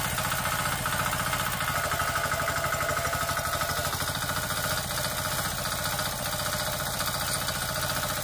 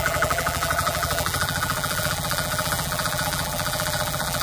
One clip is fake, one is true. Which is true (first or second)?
first